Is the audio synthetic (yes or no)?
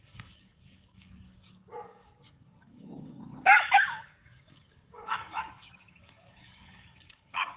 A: yes